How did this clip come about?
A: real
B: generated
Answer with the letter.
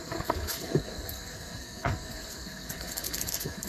B